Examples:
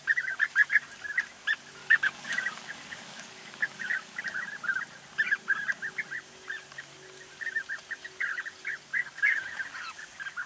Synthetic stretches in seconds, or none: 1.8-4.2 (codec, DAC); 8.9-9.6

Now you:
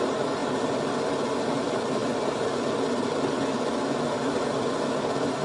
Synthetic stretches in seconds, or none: 0.0-0.4 (vocoder, BigVGAN v2); 1.5-2.0; 4.2-5.4

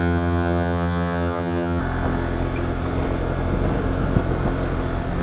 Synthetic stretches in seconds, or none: 0.0-1.8 (vocoder, HiFi-GAN)

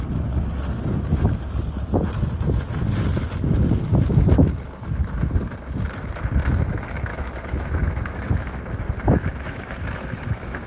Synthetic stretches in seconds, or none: 7.1-10.7 (autoencoder, DAC-VAE)

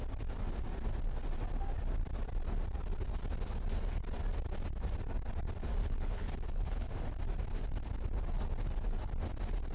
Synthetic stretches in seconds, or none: 5.8-6.9 (codec, HILCodec)

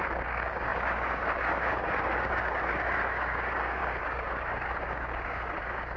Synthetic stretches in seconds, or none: 0.0-6.0 (codec, DAC)

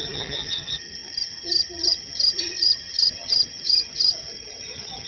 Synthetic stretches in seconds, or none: 0.0-5.1 (vocoder, HiFi-GAN)

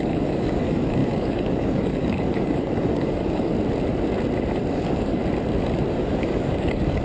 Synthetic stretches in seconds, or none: 0.0-3.5 (codec, DAC); 4.7-5.2; 5.9-7.0